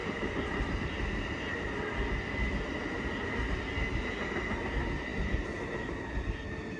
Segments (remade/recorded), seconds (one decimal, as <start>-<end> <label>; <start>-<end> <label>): 0.0-6.8 recorded